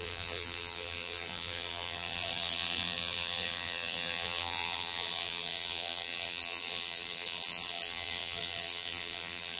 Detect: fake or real fake